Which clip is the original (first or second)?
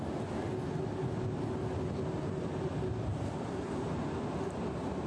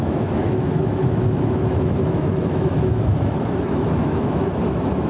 first